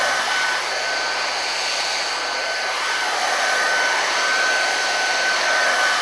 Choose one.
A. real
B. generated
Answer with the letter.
A